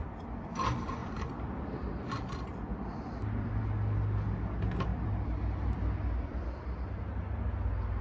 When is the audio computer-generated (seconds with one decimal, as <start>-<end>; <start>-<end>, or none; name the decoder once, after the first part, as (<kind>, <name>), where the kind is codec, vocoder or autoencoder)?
1.0-3.6 (vocoder, BigVGAN v2); 4.9-7.0